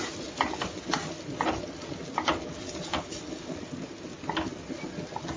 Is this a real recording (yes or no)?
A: yes